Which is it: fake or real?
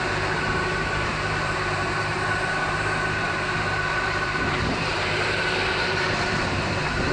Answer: fake